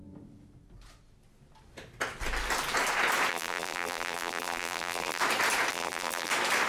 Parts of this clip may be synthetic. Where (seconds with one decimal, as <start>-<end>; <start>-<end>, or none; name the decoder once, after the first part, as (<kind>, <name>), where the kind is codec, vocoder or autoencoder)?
3.3-5.2 (vocoder, BigVGAN v2); 5.7-6.3